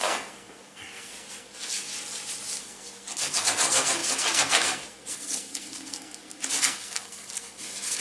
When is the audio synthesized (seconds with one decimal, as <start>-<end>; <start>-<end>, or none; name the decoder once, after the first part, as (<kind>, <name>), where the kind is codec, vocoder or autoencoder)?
0.0-1.9 (codec, SNAC); 2.6-8.0